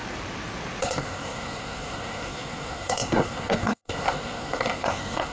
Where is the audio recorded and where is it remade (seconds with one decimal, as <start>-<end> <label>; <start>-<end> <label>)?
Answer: 0.0-0.8 recorded; 0.8-5.3 remade